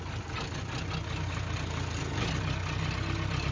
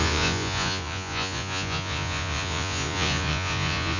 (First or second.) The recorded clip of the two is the first